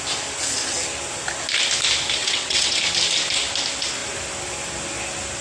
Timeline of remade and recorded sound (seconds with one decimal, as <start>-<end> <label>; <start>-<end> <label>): 0.0-2.2 recorded; 2.2-2.8 remade; 2.8-5.4 recorded